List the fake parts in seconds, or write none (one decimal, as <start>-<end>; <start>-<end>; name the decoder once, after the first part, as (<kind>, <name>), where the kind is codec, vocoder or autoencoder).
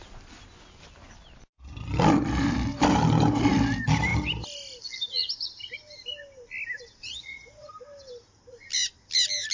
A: 7.0-7.7 (vocoder, Vocos)